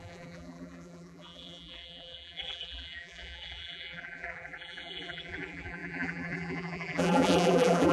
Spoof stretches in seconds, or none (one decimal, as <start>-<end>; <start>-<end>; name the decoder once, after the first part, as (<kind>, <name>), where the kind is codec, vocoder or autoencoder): 0.0-7.9 (vocoder, BigVGAN v2)